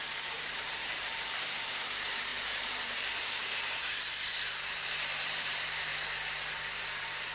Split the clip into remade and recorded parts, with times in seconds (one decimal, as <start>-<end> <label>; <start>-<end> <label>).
0.0-5.9 remade; 5.9-6.5 recorded; 6.5-7.3 remade